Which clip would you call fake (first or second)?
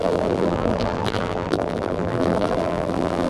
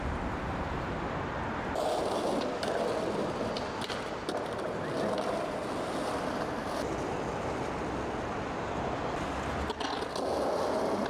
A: first